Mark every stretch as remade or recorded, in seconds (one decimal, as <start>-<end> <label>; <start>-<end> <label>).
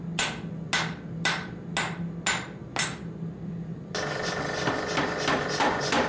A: 0.0-6.1 recorded